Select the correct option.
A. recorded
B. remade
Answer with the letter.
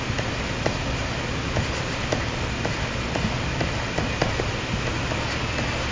A